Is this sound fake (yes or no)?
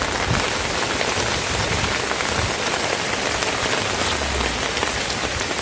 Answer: no